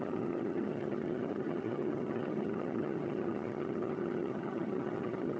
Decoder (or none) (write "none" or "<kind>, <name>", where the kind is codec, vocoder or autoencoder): vocoder, HiFi-GAN